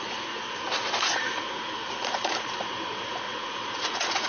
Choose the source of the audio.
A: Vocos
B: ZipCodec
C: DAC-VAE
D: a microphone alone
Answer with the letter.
A